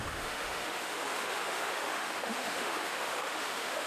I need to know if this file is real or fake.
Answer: fake